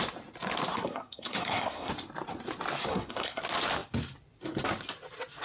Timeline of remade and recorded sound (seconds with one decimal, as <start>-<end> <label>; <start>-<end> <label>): 0.0-0.7 recorded; 0.7-1.9 remade; 1.9-2.9 recorded; 2.9-3.4 remade; 3.4-5.4 recorded